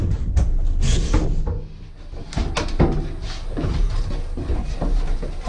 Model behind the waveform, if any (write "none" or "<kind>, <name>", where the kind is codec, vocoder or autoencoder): none